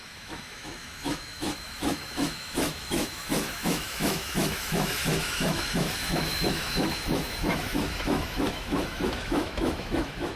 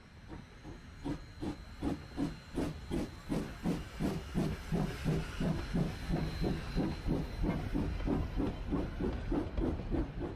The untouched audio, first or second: second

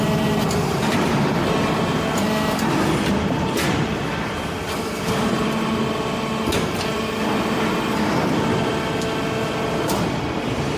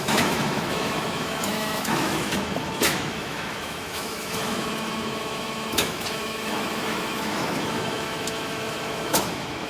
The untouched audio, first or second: first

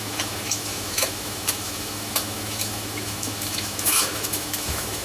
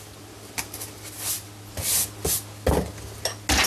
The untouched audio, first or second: second